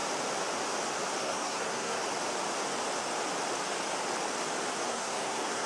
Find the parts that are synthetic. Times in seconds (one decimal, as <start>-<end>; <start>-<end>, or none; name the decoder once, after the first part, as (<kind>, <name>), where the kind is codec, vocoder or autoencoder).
1.2-2.0 (codec, SNAC); 4.9-5.7